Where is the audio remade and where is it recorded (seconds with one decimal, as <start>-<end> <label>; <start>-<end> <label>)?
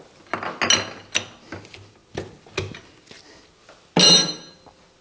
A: 0.0-5.0 recorded